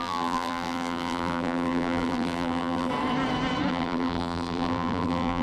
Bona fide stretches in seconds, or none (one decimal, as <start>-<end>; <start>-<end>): 2.9-3.7